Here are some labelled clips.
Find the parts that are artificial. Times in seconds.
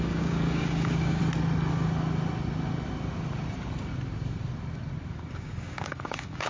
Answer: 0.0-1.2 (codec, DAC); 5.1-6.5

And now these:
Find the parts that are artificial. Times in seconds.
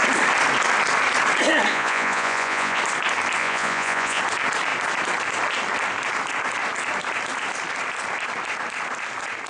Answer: 1.7-2.8 (vocoder, Vocos); 3.4-4.2